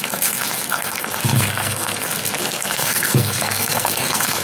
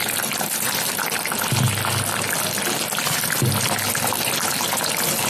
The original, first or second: second